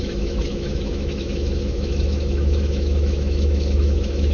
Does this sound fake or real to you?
fake